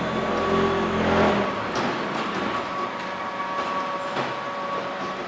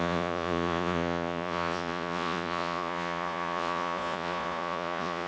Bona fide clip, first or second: first